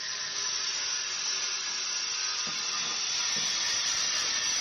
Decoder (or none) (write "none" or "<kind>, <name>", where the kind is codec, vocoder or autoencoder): none